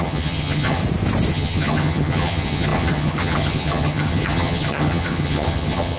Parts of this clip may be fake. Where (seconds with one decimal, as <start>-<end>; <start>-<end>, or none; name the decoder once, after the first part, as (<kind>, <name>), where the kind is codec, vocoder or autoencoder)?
0.0-0.8 (vocoder, HiFi-GAN); 1.3-6.0